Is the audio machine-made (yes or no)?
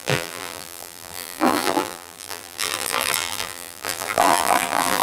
yes